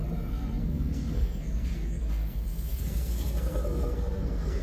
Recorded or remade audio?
remade